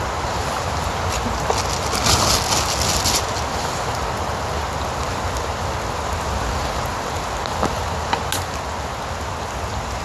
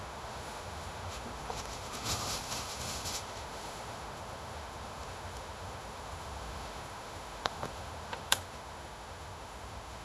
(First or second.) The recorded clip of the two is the first